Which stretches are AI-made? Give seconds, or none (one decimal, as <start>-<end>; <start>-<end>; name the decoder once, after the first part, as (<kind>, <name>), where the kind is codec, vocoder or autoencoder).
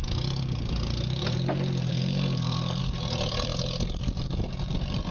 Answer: 1.9-2.8 (codec, SNAC)